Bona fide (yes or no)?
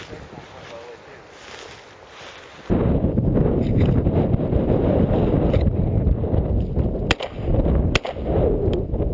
yes